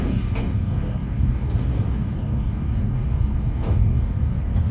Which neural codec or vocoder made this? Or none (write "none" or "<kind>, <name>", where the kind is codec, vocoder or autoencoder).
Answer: codec, DAC